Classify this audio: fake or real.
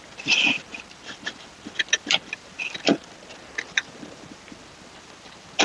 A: real